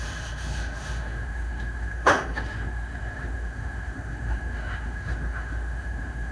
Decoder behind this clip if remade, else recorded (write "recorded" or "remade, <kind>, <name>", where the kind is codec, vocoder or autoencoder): remade, autoencoder, DAC-VAE